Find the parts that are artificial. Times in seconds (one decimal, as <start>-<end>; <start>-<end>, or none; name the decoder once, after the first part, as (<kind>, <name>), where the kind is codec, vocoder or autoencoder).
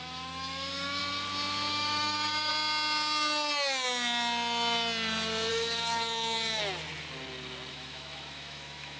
0.0-1.0 (autoencoder, DAC-VAE); 1.7-2.5; 5.5-6.6; 7.7-9.0